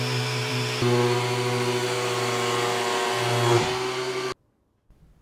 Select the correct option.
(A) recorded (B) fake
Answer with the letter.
A